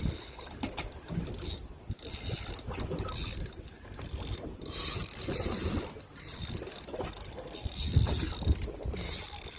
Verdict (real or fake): real